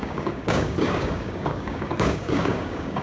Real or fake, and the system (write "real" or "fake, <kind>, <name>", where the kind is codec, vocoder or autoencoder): fake, codec, DAC